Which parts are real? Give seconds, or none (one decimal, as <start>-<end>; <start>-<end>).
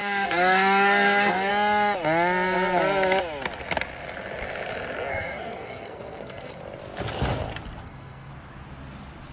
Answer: 1.5-5.1; 6.6-7.8; 8.3-9.3